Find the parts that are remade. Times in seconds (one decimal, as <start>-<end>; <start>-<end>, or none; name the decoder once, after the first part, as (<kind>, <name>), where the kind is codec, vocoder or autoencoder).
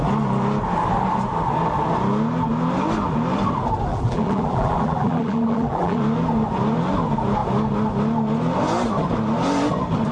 3.9-6.0 (vocoder, BigVGAN v2)